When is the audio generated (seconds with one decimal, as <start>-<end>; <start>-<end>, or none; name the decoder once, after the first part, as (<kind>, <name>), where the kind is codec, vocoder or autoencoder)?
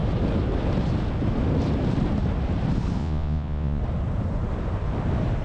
3.0-3.8 (vocoder, Vocos)